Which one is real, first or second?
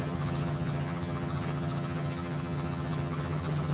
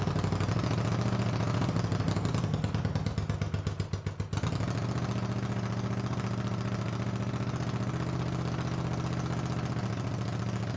second